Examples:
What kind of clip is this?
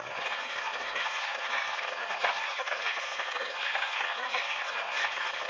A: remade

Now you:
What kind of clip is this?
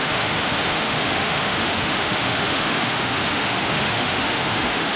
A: remade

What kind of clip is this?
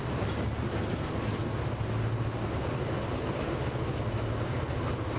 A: recorded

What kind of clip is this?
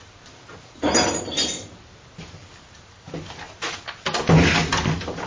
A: recorded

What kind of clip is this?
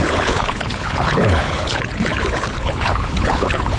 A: remade